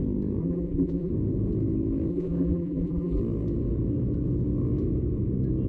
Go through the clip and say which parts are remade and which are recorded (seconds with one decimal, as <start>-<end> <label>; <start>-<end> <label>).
0.0-0.4 recorded; 0.4-1.1 remade; 1.1-2.1 recorded; 2.1-3.2 remade; 3.2-5.7 recorded